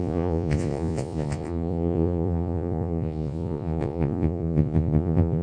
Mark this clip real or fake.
fake